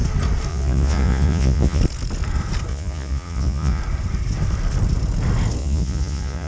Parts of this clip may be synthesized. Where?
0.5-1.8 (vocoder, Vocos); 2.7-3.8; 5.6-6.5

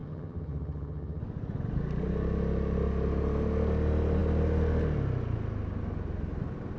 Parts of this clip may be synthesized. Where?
0.0-1.2 (vocoder, HiFi-GAN)

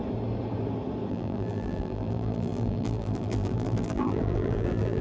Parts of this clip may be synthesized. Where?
1.1-5.0 (vocoder, BigVGAN v2)

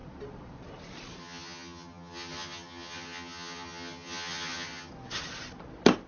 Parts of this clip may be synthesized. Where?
1.2-4.9 (vocoder, HiFi-GAN)

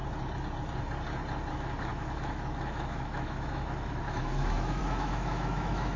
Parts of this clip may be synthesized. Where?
1.5-6.0 (autoencoder, DAC-VAE)

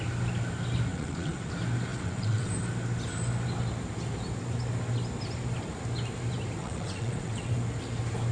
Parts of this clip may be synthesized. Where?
0.9-1.5 (vocoder, WaveNeXt); 1.9-2.5; 6.6-7.5